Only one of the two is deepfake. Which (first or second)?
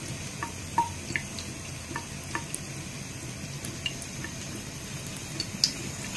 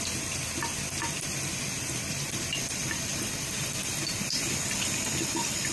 second